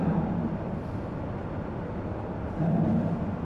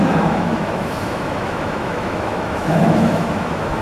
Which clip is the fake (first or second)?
second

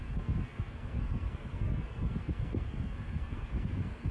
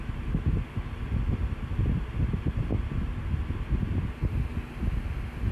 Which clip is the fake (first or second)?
first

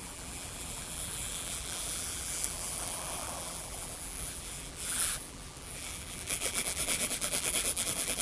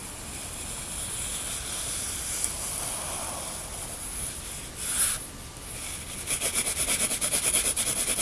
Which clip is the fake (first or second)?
first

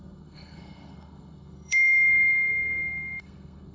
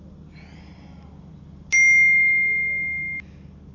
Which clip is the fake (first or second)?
first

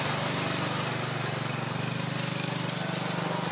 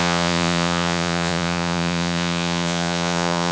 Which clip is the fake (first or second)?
second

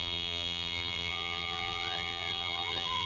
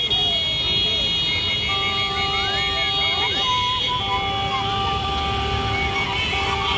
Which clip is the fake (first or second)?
first